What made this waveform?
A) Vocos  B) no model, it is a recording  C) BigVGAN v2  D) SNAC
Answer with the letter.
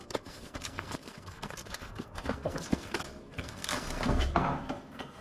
D